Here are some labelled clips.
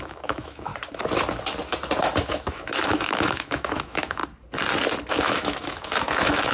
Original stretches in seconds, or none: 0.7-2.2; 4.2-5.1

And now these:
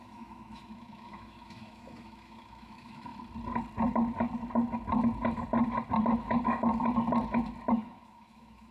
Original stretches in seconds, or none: 3.1-7.7